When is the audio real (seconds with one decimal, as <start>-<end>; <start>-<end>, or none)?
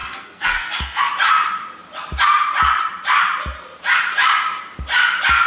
1.1-5.5